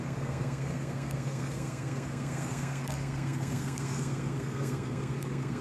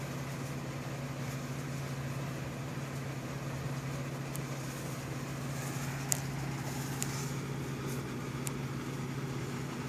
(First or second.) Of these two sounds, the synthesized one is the first